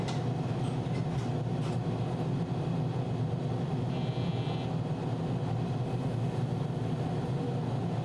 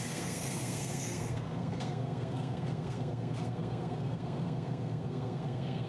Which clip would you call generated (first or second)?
second